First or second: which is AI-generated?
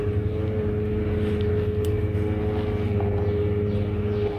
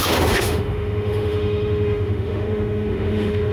second